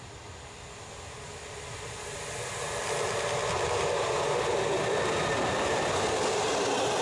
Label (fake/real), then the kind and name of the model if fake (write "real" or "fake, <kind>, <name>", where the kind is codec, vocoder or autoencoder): real